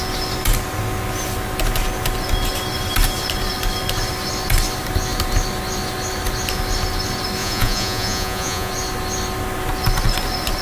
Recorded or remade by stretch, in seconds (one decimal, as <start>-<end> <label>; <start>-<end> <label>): 0.0-7.4 recorded; 7.4-8.7 remade; 8.7-10.6 recorded